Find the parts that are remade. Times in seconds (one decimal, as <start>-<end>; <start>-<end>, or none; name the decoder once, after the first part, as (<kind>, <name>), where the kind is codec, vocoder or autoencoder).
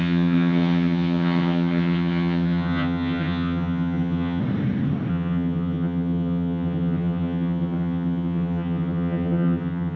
0.0-4.4 (vocoder, HiFi-GAN); 5.1-10.0